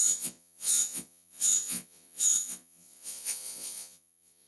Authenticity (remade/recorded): remade